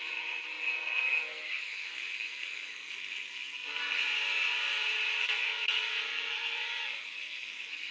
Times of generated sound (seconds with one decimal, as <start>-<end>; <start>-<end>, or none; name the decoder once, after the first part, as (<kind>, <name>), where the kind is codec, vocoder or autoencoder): 0.0-4.0 (codec, SNAC); 5.2-7.9